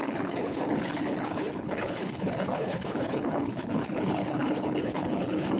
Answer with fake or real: fake